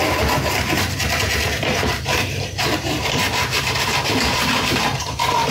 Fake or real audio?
fake